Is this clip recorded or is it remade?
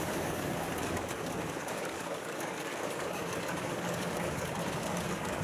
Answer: remade